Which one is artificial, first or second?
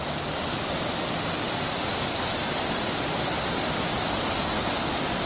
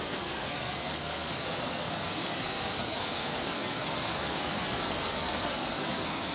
second